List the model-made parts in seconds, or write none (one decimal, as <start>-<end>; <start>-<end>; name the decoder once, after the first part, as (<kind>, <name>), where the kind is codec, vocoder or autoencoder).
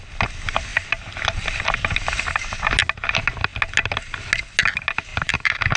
5.1-5.8 (vocoder, BigVGAN v2)